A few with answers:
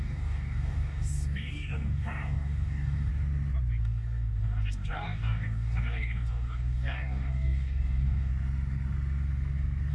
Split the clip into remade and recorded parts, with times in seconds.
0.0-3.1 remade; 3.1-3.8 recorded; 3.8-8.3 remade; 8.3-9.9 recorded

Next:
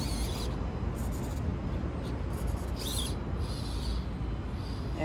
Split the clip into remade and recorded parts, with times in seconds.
0.0-5.0 recorded

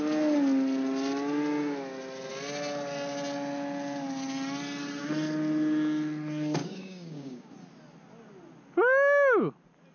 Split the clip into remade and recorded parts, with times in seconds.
0.0-6.6 recorded; 6.6-7.5 remade; 7.5-9.9 recorded

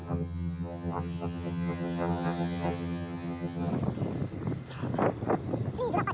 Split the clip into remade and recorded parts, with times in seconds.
0.0-3.7 remade; 3.7-6.1 recorded

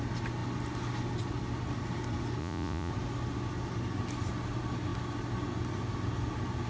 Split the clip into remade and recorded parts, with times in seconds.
0.0-2.4 recorded; 2.4-2.9 remade; 2.9-6.7 recorded

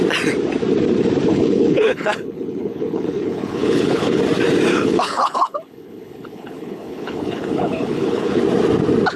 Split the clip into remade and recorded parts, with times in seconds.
0.0-1.3 recorded; 1.3-4.2 remade; 4.2-4.7 recorded; 4.7-8.4 remade; 8.4-9.2 recorded

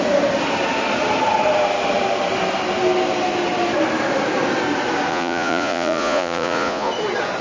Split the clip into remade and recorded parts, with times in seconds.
0.0-5.1 recorded; 5.1-6.9 remade; 6.9-7.4 recorded